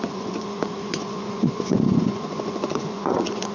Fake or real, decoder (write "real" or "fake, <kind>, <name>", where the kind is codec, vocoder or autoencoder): fake, vocoder, Vocos